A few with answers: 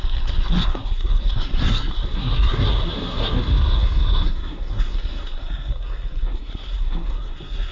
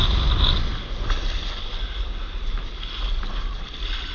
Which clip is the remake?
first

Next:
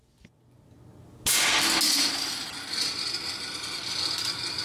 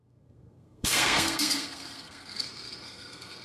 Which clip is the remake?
second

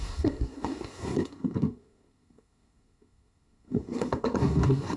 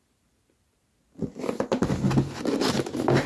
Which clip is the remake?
first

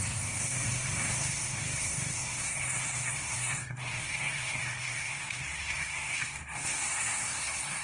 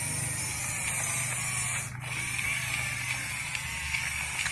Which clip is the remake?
first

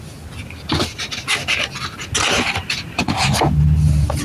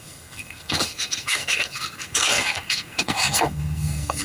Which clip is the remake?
second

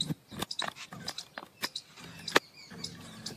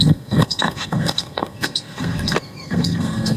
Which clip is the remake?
second